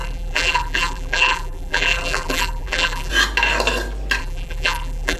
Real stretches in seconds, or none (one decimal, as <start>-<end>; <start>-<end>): 3.1-4.2